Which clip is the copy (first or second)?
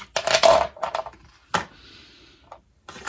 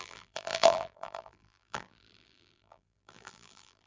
second